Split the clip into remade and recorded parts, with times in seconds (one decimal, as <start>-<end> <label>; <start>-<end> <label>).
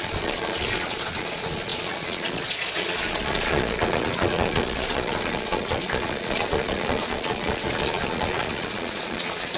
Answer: 0.0-9.6 remade